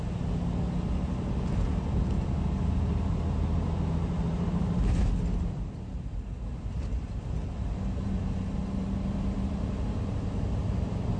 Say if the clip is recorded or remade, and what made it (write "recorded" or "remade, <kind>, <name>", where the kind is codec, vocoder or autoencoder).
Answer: recorded